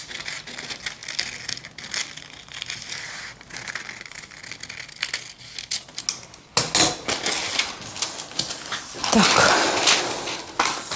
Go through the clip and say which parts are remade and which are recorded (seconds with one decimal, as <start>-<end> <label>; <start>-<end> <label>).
0.0-11.0 recorded